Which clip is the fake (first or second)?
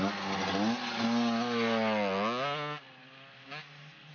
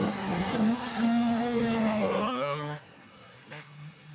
second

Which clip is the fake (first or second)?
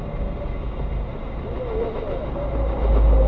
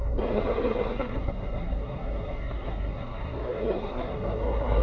second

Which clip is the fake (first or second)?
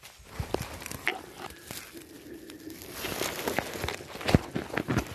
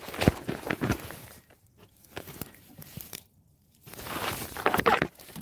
second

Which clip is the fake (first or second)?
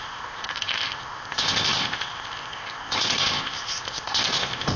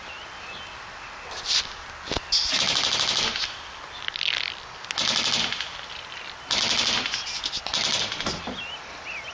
first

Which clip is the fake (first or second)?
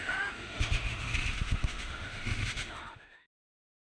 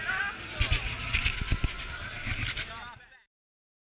first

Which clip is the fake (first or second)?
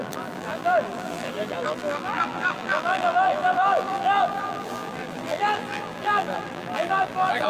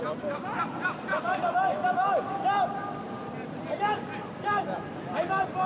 first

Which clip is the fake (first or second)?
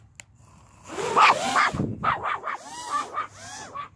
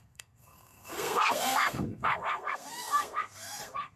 second